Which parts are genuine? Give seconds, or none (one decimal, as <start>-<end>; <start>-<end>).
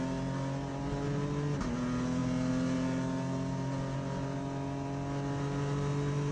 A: 0.0-6.3